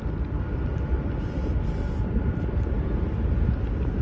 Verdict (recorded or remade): recorded